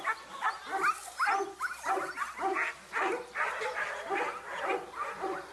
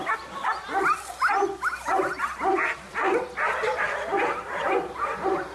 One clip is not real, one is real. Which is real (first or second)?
first